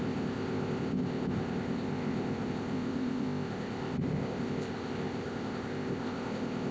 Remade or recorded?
remade